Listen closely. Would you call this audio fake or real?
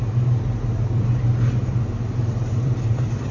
fake